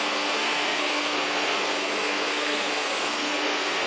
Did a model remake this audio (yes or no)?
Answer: yes